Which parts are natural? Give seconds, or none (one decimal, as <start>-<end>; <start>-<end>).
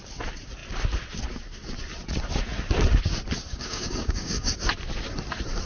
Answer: 0.0-3.5; 4.5-5.7